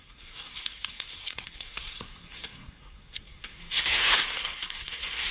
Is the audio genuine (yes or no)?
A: no